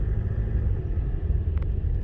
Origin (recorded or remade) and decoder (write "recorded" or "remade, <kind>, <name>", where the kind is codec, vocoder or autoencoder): recorded